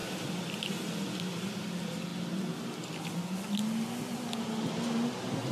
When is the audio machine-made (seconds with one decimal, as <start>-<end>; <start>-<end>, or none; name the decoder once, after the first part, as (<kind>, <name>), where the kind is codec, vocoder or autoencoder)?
none